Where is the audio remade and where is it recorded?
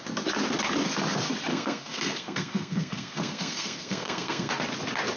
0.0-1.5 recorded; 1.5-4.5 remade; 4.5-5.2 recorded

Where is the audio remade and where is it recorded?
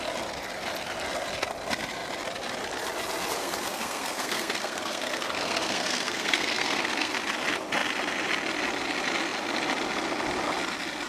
0.0-3.4 recorded; 3.4-7.1 remade; 7.1-11.1 recorded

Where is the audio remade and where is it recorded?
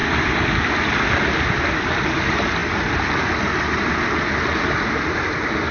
0.0-5.7 recorded